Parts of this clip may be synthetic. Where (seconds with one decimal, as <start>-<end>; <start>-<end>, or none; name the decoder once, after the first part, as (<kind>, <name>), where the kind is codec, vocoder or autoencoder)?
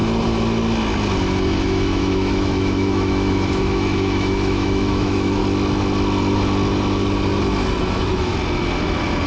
1.6-5.4 (autoencoder, DAC-VAE); 7.8-8.3